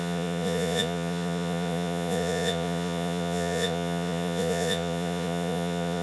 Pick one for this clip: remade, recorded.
remade